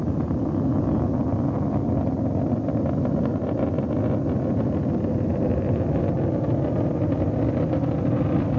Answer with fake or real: real